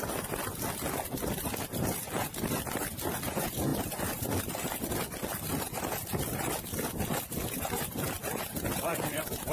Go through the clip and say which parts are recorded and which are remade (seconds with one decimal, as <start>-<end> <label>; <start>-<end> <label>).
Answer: 0.0-9.5 recorded